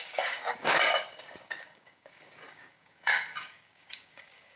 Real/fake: fake